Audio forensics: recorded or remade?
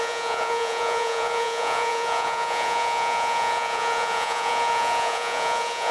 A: remade